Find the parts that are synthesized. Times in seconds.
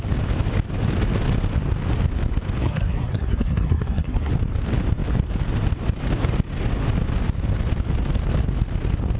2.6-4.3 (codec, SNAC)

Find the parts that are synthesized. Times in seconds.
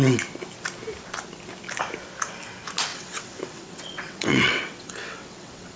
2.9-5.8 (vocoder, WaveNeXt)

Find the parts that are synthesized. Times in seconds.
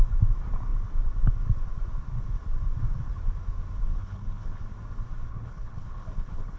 3.9-4.6 (codec, HILCodec); 5.3-6.6